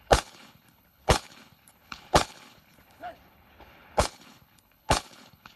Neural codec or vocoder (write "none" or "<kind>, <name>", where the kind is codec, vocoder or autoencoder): codec, HILCodec